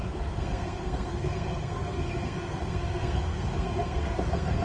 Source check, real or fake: fake